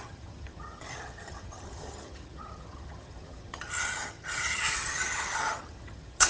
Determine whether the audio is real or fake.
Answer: fake